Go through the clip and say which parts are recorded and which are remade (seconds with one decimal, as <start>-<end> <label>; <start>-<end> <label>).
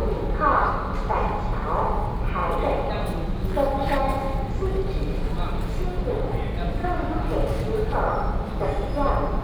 0.0-0.7 remade; 0.7-6.8 recorded; 6.8-8.9 remade; 8.9-9.4 recorded